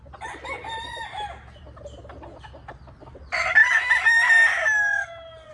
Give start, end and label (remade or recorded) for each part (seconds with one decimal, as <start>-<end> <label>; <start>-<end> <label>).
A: 0.0-5.5 recorded